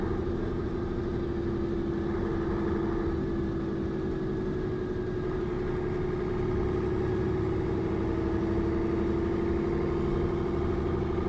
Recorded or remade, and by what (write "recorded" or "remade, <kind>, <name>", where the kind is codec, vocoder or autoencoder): recorded